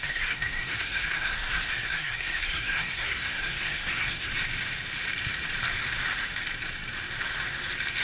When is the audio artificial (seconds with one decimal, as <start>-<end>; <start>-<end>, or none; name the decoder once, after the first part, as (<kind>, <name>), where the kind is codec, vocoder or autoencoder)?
0.0-4.3 (codec, SNAC)